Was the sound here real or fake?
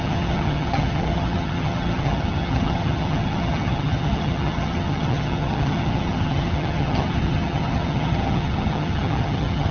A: fake